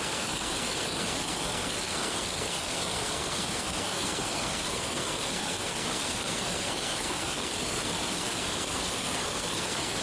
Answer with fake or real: fake